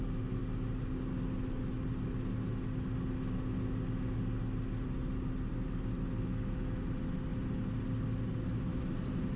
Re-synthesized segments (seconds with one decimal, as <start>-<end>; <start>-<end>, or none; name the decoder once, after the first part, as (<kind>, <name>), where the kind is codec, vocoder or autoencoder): none